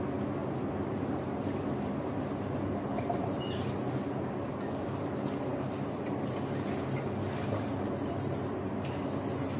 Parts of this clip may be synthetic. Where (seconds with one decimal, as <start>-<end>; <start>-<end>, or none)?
0.4-1.2; 2.9-4.6